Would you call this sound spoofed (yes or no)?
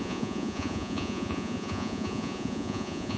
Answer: yes